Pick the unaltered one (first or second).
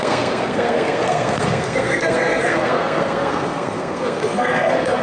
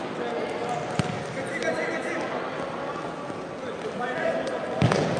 second